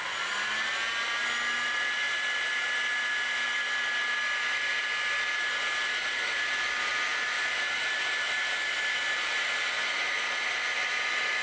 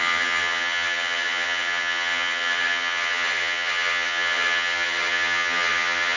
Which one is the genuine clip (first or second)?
first